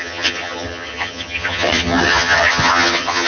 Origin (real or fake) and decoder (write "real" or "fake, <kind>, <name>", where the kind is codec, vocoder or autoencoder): fake, vocoder, HiFi-GAN